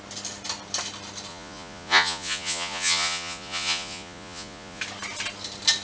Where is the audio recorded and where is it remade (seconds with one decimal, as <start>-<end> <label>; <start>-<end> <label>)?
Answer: 0.0-1.3 recorded; 1.3-4.8 remade; 4.8-5.8 recorded

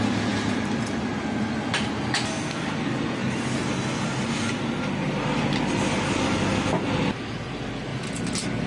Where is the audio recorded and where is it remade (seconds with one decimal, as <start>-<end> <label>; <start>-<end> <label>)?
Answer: 0.0-8.7 recorded

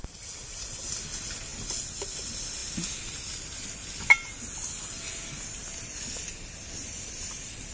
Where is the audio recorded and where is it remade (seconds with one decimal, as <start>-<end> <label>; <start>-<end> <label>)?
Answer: 0.0-7.7 recorded

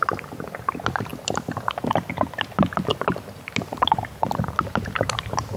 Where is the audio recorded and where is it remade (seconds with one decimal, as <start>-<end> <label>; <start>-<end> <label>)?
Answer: 0.0-1.1 recorded; 1.1-2.1 remade; 2.1-2.9 recorded; 2.9-5.6 remade

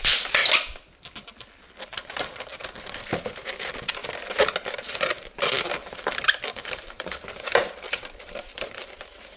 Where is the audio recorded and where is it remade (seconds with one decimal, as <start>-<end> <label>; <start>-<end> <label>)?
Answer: 0.0-0.4 remade; 0.4-2.8 recorded; 2.8-4.0 remade; 4.0-4.7 recorded; 4.7-9.4 remade

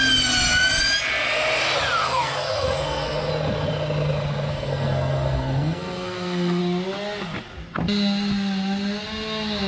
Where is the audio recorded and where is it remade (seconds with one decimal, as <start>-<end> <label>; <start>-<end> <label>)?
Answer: 0.0-2.0 recorded; 2.0-3.3 remade; 3.3-4.5 recorded; 4.5-6.6 remade; 6.6-9.7 recorded

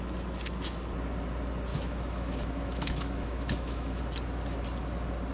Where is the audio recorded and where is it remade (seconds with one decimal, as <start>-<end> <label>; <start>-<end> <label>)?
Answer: 0.0-1.7 recorded; 1.7-4.0 remade; 4.0-5.3 recorded

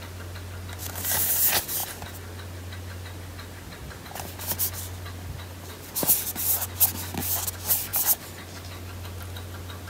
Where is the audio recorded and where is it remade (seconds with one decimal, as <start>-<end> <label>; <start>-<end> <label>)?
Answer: 0.0-0.8 recorded; 0.8-1.3 remade; 1.3-9.9 recorded